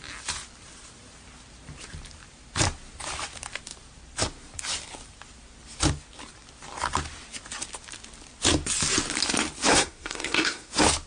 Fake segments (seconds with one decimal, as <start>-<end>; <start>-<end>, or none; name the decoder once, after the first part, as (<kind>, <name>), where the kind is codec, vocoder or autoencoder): 9.7-10.7 (codec, SNAC)